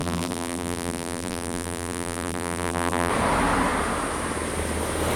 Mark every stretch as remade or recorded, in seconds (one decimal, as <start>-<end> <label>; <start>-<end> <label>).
0.0-3.1 remade; 3.1-5.2 recorded